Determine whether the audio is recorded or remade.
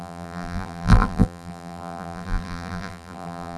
remade